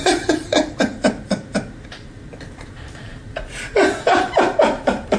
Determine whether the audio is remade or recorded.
remade